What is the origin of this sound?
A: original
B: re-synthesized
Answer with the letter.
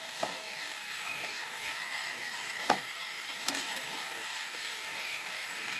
B